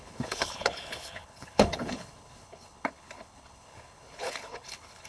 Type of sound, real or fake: fake